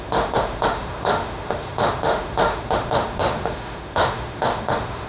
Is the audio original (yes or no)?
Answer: no